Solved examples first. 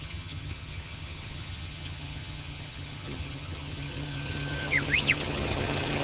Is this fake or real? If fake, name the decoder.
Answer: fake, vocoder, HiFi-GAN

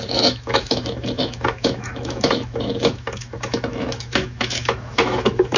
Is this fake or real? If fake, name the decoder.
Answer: fake, autoencoder, DAC-VAE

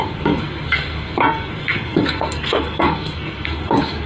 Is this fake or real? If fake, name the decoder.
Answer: fake, codec, SNAC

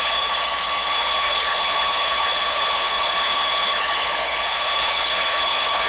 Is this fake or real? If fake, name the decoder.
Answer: fake, codec, HILCodec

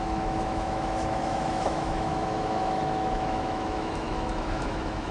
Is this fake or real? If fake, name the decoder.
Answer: fake, autoencoder, DAC-VAE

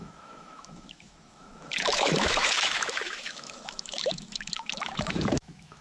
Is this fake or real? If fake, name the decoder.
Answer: fake, autoencoder, DAC-VAE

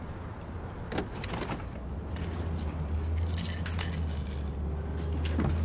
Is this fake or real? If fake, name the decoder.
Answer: real